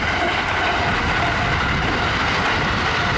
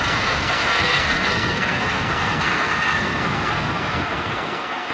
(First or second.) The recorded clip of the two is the first